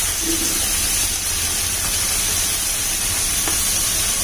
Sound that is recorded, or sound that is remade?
recorded